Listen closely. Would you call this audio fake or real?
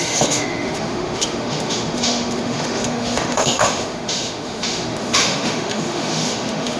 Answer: fake